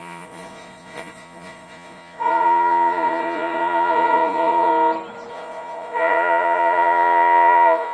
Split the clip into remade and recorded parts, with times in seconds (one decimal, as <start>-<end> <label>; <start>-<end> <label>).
0.0-4.7 remade; 4.7-5.3 recorded; 5.3-7.9 remade